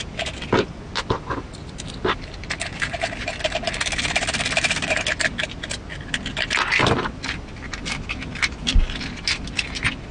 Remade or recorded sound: recorded